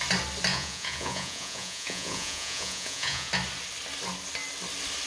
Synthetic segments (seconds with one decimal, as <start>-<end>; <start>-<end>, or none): 0.5-3.3